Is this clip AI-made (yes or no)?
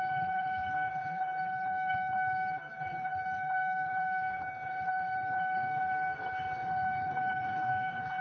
yes